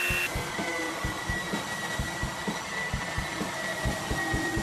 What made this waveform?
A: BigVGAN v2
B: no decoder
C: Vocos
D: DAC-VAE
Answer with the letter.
B